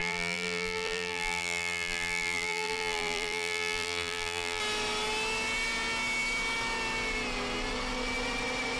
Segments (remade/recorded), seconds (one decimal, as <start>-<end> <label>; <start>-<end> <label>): 0.0-4.6 remade; 4.6-8.8 recorded